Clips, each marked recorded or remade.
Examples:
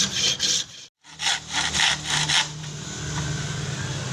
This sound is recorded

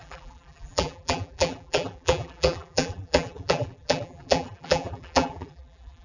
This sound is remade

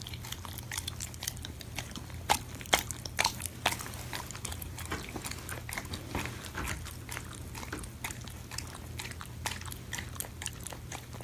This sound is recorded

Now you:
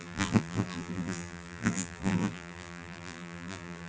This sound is remade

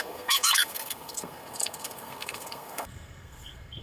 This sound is remade